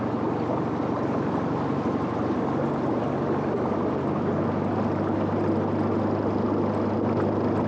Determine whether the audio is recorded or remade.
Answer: recorded